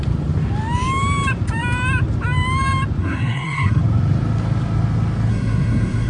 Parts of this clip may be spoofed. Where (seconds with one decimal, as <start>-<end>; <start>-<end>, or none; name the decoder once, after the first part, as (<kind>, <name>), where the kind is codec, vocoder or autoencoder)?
3.0-3.8 (codec, SNAC); 5.3-6.1